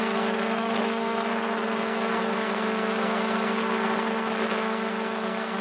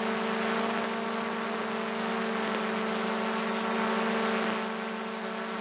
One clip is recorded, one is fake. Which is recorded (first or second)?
second